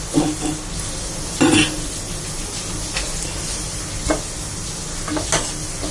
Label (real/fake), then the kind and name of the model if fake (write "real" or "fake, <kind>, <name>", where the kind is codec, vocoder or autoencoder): real